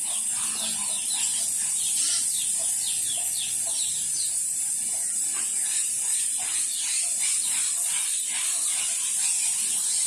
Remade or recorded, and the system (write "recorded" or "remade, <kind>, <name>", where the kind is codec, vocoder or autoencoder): recorded